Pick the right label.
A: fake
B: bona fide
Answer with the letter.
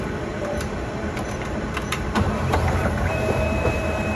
A